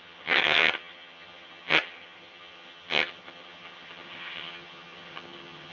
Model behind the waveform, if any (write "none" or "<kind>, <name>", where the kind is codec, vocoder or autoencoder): vocoder, HiFi-GAN